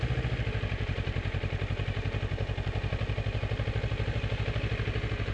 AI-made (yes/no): no